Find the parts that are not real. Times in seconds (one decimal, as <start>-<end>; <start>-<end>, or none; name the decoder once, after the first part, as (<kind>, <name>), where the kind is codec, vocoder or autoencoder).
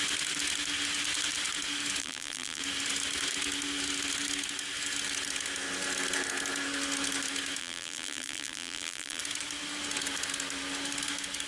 2.0-2.6 (vocoder, BigVGAN v2); 7.6-9.2